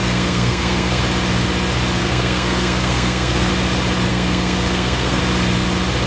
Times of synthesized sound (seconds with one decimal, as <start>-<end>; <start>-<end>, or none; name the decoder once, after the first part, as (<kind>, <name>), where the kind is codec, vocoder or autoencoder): 0.0-1.0 (codec, SNAC); 2.0-3.5; 4.1-5.2